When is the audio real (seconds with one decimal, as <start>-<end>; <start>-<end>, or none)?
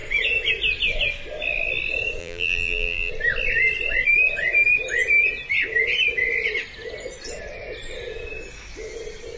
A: 0.0-2.2; 3.1-9.4